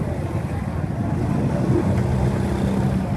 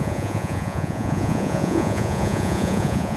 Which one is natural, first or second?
first